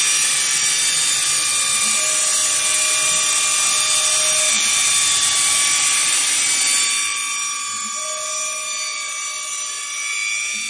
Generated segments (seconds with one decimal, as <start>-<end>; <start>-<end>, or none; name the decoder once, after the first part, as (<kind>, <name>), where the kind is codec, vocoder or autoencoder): none